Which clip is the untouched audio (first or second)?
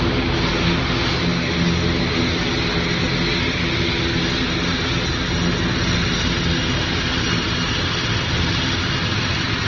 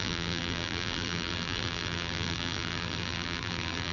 first